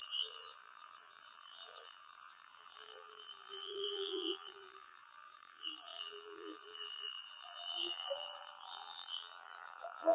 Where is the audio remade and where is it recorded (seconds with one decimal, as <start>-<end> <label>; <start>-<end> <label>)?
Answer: 0.0-10.1 remade